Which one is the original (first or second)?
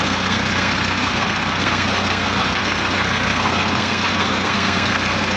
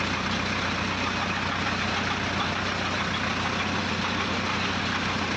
second